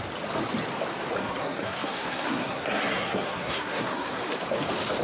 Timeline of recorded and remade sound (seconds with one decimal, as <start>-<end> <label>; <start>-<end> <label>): 0.0-1.2 recorded; 1.2-4.2 remade; 4.2-5.0 recorded